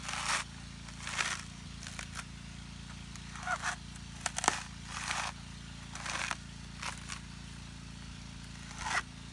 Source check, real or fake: real